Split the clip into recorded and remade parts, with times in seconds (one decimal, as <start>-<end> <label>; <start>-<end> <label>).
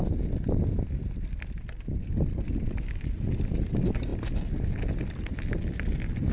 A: 0.0-6.3 recorded